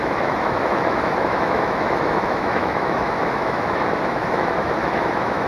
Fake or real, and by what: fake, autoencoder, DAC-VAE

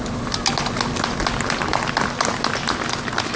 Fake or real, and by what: real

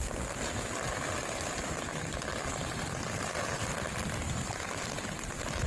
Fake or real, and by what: real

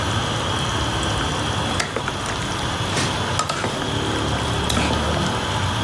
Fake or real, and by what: real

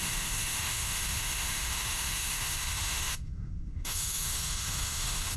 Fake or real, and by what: fake, autoencoder, DAC-VAE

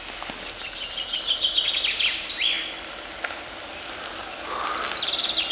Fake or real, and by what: real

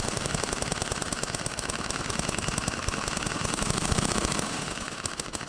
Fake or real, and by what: fake, autoencoder, DAC-VAE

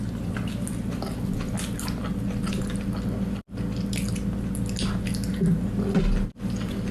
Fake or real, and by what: real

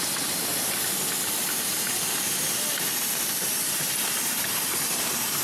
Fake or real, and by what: real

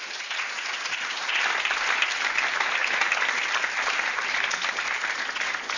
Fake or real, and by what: real